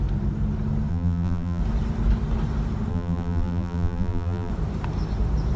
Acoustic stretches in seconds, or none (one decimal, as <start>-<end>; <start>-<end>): 0.0-0.9; 1.6-2.9; 4.5-5.6